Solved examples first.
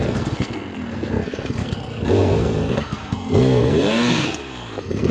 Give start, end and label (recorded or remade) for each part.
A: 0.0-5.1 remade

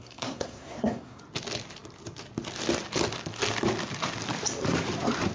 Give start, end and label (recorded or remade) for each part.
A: 0.0-1.2 remade; 1.2-5.3 recorded

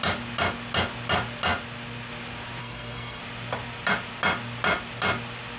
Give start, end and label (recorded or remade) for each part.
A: 0.0-2.6 recorded; 2.6-3.2 remade; 3.2-5.6 recorded

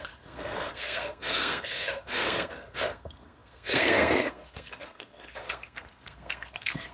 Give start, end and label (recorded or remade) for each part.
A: 0.0-6.9 remade

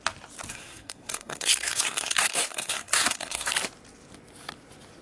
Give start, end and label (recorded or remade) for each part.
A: 0.0-0.5 recorded; 0.5-3.5 remade; 3.5-5.0 recorded

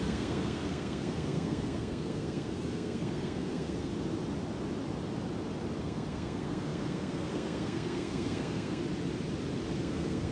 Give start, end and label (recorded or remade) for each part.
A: 0.0-3.9 remade; 3.9-5.8 recorded; 5.8-8.8 remade; 8.8-9.8 recorded; 9.8-10.3 remade

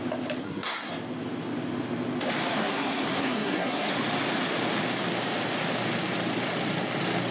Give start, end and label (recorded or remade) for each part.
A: 0.0-0.4 recorded; 0.4-0.9 remade; 0.9-2.6 recorded; 2.6-3.9 remade; 3.9-7.3 recorded

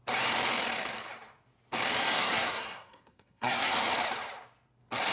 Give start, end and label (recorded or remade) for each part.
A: 0.0-2.0 recorded; 2.0-3.7 remade; 3.7-5.1 recorded